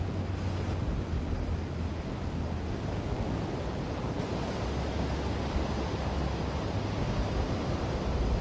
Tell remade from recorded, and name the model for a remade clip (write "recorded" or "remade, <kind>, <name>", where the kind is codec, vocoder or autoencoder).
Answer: recorded